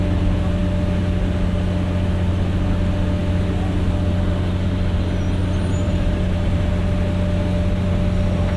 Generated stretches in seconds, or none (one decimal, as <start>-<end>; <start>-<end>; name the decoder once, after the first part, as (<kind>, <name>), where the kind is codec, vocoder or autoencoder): 5.4-6.7 (vocoder, BigVGAN v2)